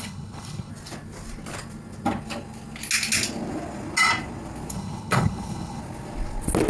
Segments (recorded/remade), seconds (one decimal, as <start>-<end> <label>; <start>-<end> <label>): 0.0-0.7 remade; 0.7-4.7 recorded; 4.7-5.8 remade; 5.8-6.7 recorded